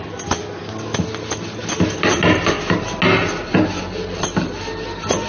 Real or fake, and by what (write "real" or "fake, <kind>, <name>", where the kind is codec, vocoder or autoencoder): real